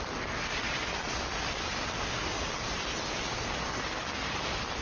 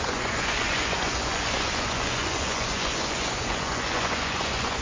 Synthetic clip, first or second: second